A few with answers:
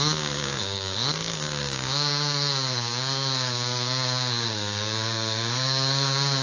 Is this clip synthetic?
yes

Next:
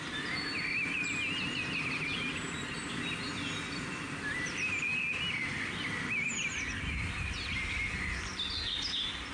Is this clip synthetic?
no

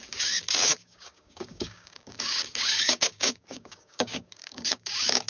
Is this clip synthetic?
yes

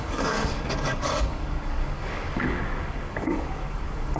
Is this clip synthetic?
yes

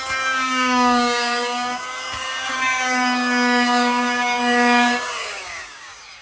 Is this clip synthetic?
yes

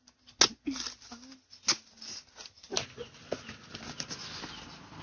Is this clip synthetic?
no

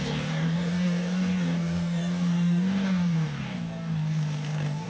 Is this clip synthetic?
yes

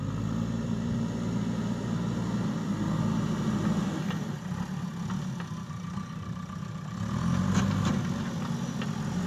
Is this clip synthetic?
no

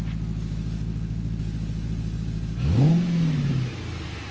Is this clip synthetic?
no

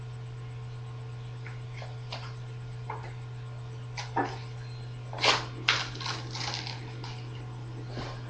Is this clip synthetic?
no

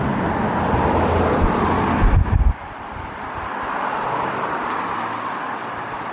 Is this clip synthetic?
no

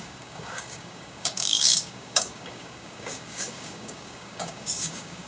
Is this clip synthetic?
yes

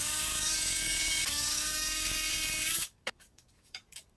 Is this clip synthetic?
yes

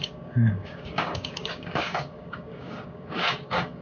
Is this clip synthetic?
yes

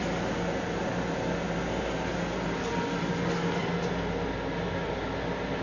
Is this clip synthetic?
no